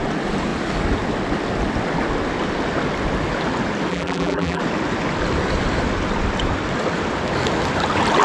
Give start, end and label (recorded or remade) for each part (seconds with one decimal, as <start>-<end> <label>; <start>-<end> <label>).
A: 0.0-3.9 recorded; 3.9-4.6 remade; 4.6-8.2 recorded

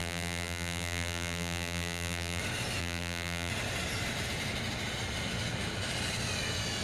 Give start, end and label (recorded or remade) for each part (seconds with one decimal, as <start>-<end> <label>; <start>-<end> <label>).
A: 0.0-2.4 remade; 2.4-2.8 recorded; 2.8-3.5 remade; 3.5-6.8 recorded